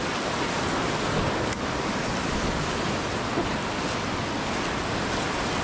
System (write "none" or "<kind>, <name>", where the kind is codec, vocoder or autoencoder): none